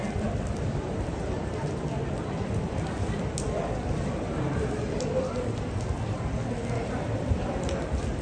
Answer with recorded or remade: recorded